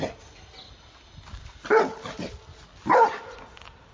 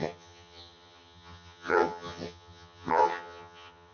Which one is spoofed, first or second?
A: second